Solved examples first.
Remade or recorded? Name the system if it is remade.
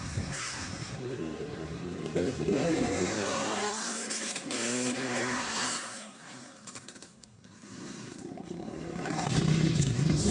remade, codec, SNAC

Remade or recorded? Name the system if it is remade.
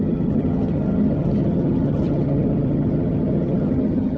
remade, vocoder, HiFi-GAN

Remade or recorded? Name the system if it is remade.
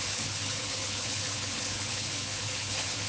remade, codec, HILCodec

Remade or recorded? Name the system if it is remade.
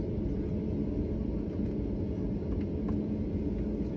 recorded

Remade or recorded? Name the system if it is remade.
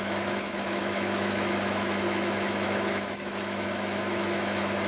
remade, autoencoder, DAC-VAE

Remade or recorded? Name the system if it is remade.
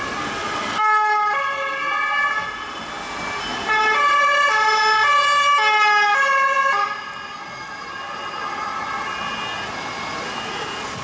recorded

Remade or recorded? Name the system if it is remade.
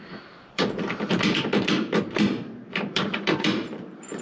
remade, vocoder, BigVGAN v2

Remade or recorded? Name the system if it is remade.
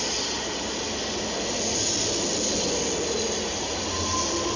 recorded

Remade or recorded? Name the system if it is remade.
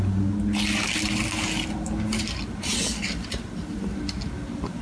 recorded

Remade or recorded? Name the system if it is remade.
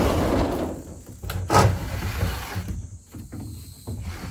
recorded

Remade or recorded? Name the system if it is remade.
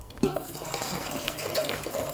remade, codec, SNAC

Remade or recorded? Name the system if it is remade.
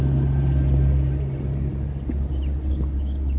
recorded